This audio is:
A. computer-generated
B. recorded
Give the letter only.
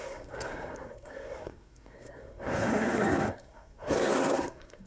A